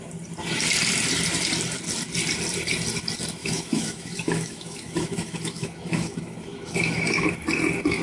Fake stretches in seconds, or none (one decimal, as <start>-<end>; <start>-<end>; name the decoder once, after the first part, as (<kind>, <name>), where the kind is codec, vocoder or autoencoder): 3.4-7.3 (autoencoder, DAC-VAE)